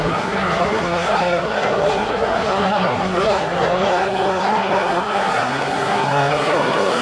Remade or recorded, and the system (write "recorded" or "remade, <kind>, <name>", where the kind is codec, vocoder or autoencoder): remade, codec, SNAC